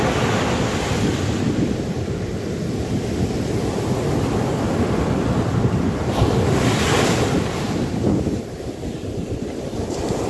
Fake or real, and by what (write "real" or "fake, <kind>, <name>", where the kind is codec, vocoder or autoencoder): fake, vocoder, BigVGAN v2